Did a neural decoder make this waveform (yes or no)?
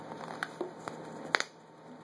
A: no